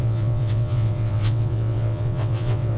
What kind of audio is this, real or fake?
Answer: fake